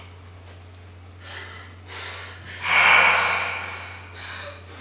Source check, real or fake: real